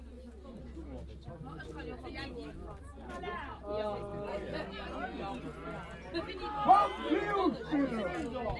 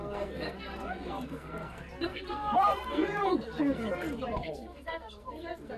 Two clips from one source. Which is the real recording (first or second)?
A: first